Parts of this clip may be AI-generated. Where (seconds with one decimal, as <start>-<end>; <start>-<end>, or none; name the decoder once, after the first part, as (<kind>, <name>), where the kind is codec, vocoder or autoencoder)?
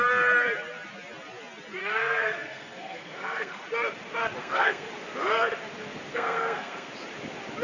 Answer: 1.8-3.6 (codec, SNAC); 4.4-4.9; 6.1-6.9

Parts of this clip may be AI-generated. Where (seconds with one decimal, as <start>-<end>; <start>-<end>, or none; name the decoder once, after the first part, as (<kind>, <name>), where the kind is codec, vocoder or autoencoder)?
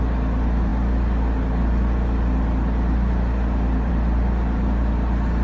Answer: none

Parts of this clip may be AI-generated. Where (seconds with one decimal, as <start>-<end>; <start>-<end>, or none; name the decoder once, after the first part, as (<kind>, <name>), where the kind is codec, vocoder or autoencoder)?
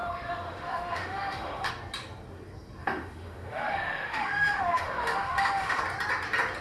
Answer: 0.0-1.7 (autoencoder, DAC-VAE); 2.8-5.8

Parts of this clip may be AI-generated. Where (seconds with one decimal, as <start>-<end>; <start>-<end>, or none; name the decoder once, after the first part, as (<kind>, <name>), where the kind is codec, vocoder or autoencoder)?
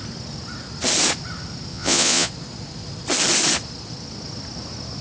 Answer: 1.7-2.3 (vocoder, Vocos)